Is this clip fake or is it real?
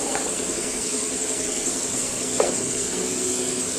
fake